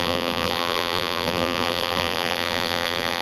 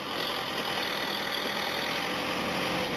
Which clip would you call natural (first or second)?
second